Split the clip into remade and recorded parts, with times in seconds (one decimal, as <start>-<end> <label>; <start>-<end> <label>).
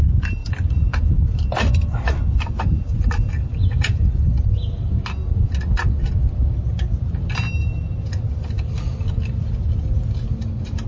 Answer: 0.0-10.9 recorded